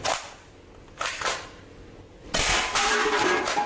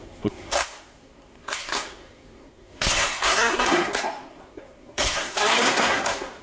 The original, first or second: first